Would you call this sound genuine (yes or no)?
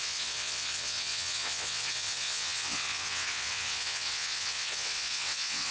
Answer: no